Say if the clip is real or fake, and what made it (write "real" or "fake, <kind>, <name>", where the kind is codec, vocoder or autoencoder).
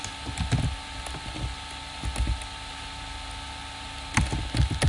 real